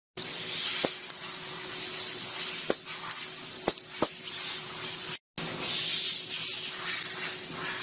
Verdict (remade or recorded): recorded